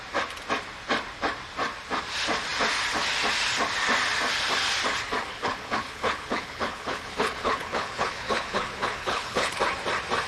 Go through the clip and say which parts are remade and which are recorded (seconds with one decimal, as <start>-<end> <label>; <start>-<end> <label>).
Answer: 0.0-5.3 recorded; 5.3-9.6 remade; 9.6-10.3 recorded